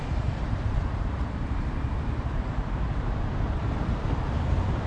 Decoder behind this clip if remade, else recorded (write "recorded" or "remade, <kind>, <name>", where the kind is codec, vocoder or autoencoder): remade, vocoder, BigVGAN v2